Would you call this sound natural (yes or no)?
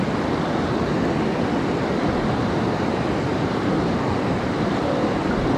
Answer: yes